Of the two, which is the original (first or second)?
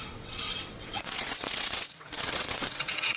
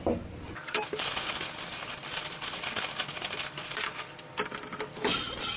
second